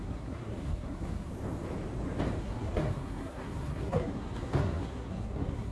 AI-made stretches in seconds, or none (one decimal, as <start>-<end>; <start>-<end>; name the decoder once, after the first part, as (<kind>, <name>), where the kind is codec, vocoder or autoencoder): 0.0-1.3 (codec, SNAC); 2.4-5.7